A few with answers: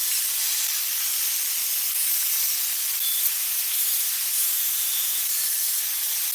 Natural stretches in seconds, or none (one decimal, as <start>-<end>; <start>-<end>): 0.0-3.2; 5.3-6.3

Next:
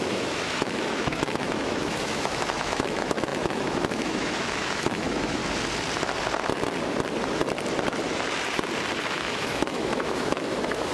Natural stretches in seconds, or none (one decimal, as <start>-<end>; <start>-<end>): 5.4-9.0

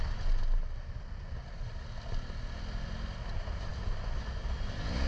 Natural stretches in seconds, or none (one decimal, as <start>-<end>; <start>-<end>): 0.0-5.1

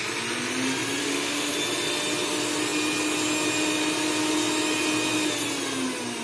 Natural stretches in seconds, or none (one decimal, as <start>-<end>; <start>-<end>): 0.0-1.0; 1.5-6.2

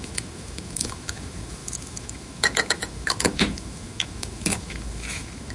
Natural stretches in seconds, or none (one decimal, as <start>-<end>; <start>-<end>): none

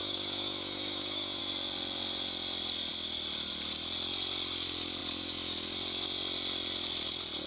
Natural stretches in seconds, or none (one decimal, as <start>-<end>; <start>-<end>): 1.4-7.5

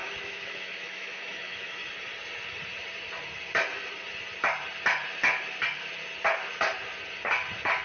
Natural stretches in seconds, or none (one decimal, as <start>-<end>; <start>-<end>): 1.9-7.8